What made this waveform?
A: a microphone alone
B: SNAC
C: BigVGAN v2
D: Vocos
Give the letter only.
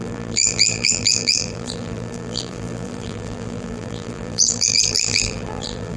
C